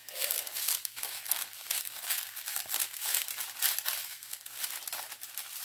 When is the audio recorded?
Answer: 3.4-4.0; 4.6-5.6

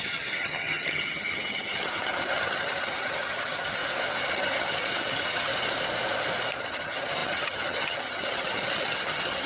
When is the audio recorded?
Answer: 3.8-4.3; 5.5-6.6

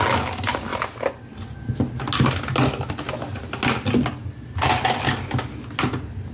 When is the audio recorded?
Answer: 0.0-6.3

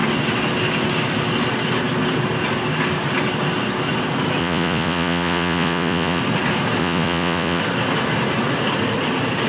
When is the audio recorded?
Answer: 0.0-4.4; 6.2-6.8; 7.6-9.5

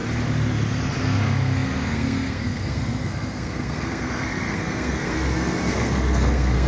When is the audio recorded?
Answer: 0.0-1.0

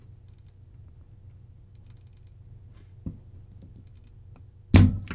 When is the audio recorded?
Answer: 0.0-5.1